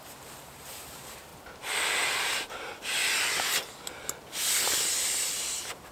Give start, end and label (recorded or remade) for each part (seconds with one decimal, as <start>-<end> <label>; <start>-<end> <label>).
0.0-1.3 remade; 1.3-4.8 recorded; 4.8-5.9 remade